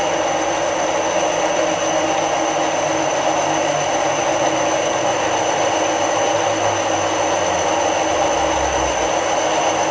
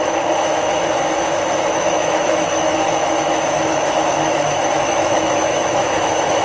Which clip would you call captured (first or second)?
first